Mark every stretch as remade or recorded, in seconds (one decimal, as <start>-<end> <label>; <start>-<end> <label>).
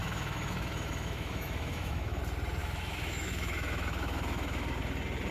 0.0-2.2 remade; 2.2-2.6 recorded; 2.6-4.8 remade; 4.8-5.3 recorded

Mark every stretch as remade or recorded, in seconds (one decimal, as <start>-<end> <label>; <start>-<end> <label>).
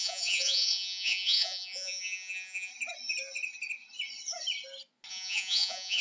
0.0-2.7 remade; 2.7-5.1 recorded; 5.1-6.0 remade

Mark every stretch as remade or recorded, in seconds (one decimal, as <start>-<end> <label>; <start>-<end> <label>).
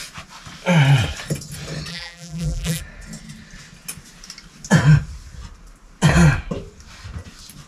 0.0-1.9 recorded; 1.9-2.8 remade; 2.8-7.7 recorded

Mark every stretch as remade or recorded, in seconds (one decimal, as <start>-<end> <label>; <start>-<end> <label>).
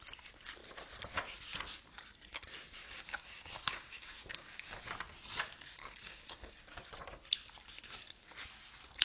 0.0-2.8 recorded; 2.8-4.8 remade; 4.8-5.8 recorded; 5.8-6.5 remade; 6.5-9.0 recorded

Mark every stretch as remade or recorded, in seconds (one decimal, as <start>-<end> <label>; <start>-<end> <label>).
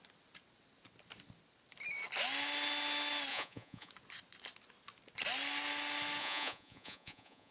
0.0-3.3 recorded; 3.3-3.9 remade; 3.9-6.2 recorded; 6.2-7.5 remade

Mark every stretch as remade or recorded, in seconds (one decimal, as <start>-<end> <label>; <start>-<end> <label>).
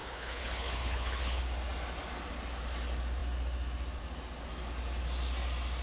0.0-1.4 remade; 1.4-5.8 recorded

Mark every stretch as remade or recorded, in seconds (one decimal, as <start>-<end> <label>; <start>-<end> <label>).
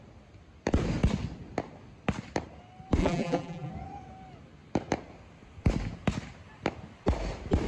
0.0-3.0 recorded; 3.0-3.7 remade; 3.7-7.7 recorded